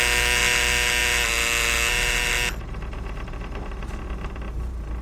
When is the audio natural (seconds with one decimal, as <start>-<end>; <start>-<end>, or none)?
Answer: 0.0-5.0